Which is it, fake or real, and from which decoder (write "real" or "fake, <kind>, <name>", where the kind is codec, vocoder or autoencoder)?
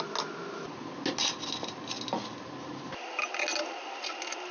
real